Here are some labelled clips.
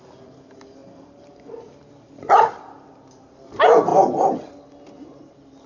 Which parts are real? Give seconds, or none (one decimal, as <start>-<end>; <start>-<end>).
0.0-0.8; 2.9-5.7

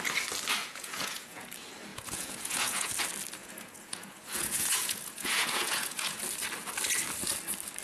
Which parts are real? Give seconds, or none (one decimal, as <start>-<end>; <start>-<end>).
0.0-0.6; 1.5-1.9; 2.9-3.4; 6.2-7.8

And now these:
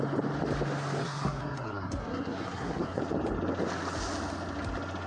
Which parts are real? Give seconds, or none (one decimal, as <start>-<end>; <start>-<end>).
0.0-1.0; 3.0-5.1